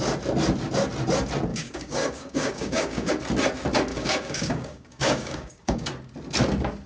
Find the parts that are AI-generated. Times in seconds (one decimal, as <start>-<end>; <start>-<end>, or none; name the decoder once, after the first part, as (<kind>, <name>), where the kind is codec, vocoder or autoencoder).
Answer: 1.5-3.1 (codec, DAC); 3.9-5.9